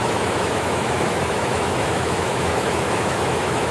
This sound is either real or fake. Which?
fake